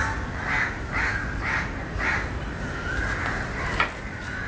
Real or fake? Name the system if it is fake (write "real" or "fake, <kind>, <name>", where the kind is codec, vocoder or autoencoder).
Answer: real